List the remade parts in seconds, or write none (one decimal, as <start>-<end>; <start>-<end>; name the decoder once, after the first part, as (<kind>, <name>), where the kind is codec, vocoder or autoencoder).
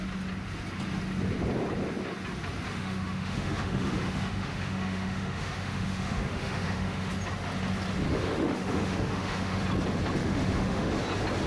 2.7-7.1 (autoencoder, DAC-VAE); 8.1-9.6; 10.2-10.9